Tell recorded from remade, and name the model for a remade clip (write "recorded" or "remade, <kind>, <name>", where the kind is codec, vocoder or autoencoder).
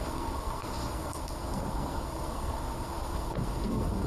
remade, codec, SNAC